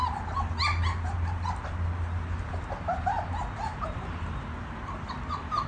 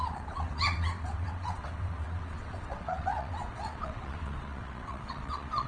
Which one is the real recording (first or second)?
first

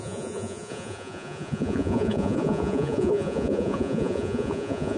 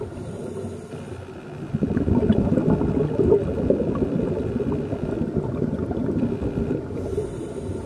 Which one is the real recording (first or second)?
second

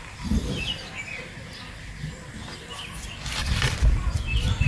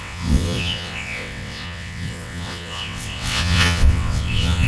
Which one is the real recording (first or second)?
first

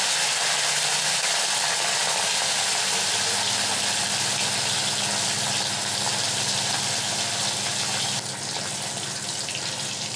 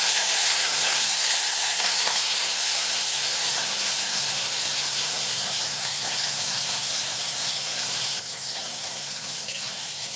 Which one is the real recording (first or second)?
first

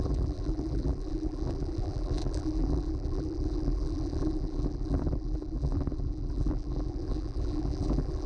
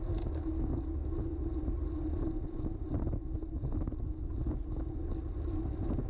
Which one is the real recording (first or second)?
second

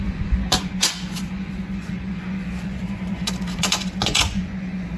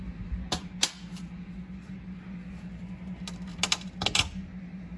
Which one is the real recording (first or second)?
second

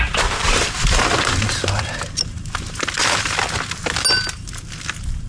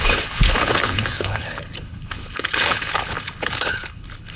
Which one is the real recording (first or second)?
first